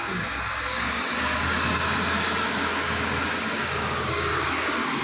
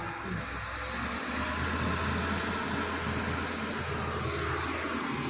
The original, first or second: second